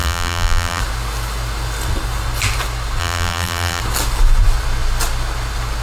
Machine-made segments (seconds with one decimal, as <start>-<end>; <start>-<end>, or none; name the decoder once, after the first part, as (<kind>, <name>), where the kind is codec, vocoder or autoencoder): 0.0-0.8 (vocoder, BigVGAN v2); 3.0-3.8